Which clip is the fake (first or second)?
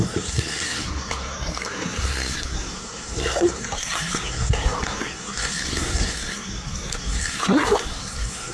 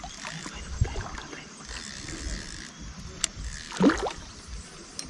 first